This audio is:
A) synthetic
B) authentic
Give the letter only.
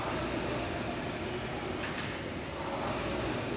B